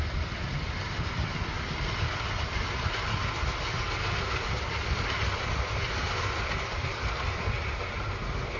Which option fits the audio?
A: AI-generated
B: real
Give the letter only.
B